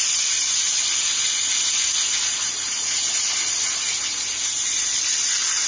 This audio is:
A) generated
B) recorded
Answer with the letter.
B